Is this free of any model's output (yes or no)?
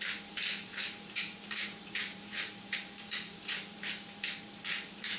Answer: no